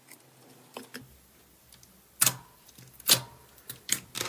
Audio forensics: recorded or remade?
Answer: recorded